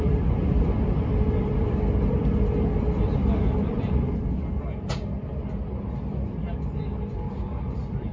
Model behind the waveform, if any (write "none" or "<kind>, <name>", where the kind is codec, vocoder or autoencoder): none